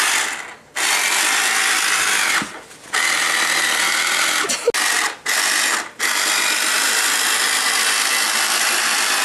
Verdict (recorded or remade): recorded